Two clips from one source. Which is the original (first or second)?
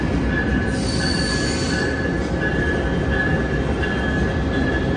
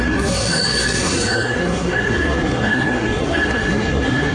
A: first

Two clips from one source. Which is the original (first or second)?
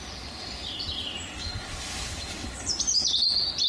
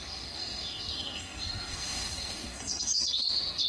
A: first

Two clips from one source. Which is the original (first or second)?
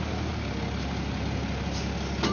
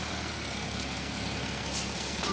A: first